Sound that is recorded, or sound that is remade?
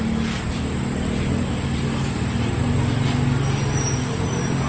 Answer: recorded